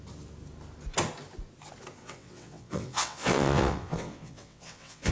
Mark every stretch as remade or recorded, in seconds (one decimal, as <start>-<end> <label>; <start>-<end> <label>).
0.0-2.0 recorded; 2.0-5.1 remade

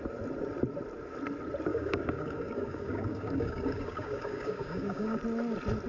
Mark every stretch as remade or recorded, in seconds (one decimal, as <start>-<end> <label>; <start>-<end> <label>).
0.0-1.7 recorded; 1.7-5.2 remade; 5.2-5.9 recorded

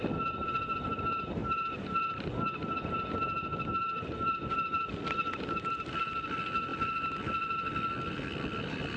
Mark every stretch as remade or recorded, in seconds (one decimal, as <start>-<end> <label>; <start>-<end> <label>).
0.0-9.0 recorded

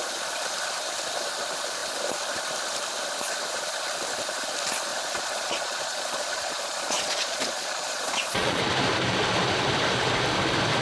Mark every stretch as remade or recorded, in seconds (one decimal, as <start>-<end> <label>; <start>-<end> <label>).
0.0-4.9 recorded; 4.9-8.6 remade; 8.6-10.8 recorded